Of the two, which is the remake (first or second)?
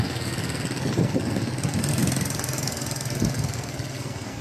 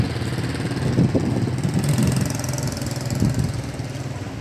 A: first